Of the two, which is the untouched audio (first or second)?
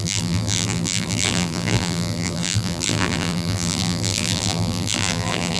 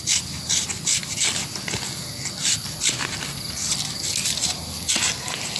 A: second